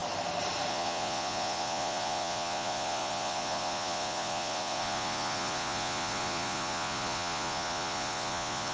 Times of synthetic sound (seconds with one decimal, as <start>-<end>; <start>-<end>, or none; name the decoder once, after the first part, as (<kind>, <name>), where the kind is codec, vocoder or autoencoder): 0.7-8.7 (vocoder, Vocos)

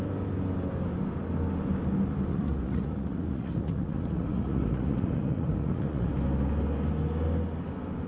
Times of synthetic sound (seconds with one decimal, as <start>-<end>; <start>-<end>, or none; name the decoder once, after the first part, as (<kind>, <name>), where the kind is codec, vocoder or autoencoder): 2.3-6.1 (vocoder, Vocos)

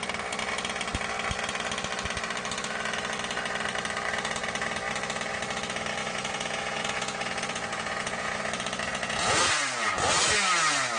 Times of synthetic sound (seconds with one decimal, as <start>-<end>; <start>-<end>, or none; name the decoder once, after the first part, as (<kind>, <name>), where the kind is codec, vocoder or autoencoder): 6.0-8.4 (vocoder, Vocos); 8.9-9.9

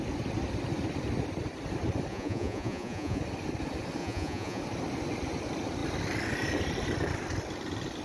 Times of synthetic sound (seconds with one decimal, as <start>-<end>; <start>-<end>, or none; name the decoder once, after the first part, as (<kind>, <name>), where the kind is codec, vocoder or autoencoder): 2.1-3.2 (vocoder, Vocos); 4.0-4.6

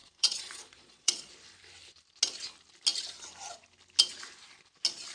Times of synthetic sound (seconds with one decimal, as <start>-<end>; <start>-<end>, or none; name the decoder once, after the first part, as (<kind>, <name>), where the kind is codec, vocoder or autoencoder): 0.0-1.3 (vocoder, Vocos)

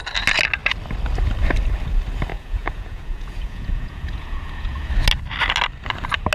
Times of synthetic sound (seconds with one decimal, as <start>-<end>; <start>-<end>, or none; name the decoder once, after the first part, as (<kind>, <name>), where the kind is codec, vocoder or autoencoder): 2.3-4.9 (vocoder, Vocos)

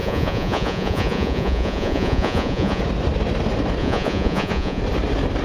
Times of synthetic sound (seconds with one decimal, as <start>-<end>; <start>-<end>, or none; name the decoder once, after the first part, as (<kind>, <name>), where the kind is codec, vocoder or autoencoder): 0.0-2.8 (vocoder, Vocos); 3.8-4.8

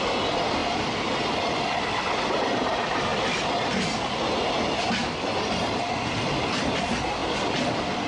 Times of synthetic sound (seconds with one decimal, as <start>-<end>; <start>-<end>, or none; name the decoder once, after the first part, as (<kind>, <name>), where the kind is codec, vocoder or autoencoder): none